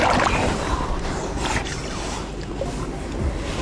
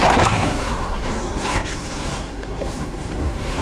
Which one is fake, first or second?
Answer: second